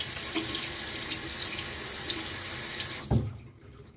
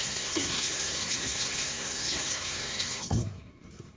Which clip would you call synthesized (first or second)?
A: second